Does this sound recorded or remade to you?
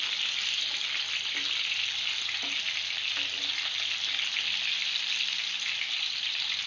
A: recorded